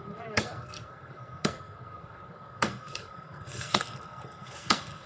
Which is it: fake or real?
fake